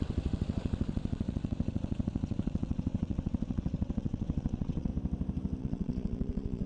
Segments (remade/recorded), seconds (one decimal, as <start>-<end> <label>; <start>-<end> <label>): 0.0-4.9 remade; 4.9-5.6 recorded; 5.6-6.7 remade